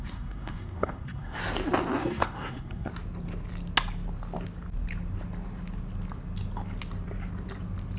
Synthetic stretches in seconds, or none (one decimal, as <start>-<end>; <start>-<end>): 0.0-1.4; 2.0-2.9